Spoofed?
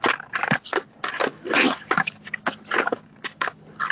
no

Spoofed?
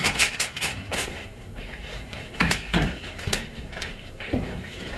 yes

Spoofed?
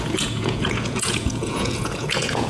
yes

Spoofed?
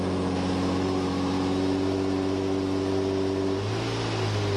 no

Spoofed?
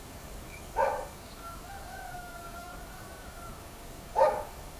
yes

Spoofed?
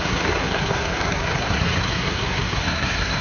yes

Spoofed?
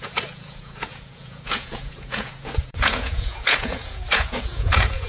yes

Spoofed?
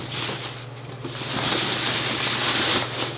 no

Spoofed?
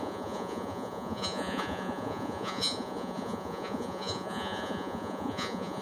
yes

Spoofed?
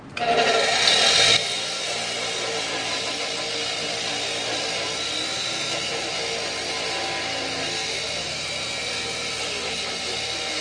no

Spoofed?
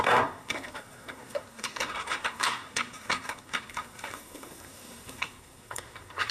yes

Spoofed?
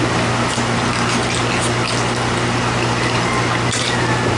no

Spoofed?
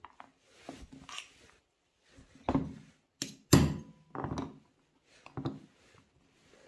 no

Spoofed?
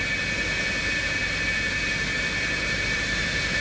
yes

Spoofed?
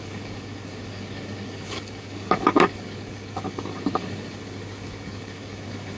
yes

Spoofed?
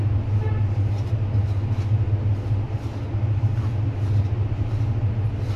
no